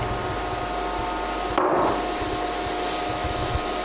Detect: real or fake real